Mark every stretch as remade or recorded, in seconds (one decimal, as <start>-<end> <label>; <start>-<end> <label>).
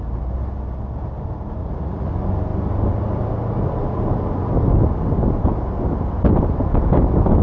0.0-1.6 recorded; 1.6-2.1 remade; 2.1-7.4 recorded